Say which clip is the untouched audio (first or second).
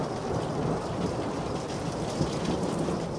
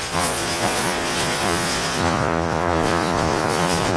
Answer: first